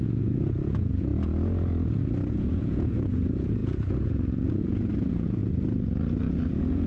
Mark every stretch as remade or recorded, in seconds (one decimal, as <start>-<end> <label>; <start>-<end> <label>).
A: 0.0-1.1 remade; 1.1-2.3 recorded; 2.3-5.4 remade; 5.4-6.2 recorded; 6.2-6.9 remade